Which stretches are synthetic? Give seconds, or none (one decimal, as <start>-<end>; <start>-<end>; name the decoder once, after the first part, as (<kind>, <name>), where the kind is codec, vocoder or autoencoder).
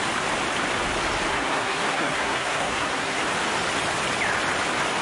1.3-3.2 (codec, SNAC)